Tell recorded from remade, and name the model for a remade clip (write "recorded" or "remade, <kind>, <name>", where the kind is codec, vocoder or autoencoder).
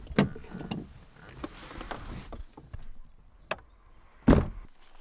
recorded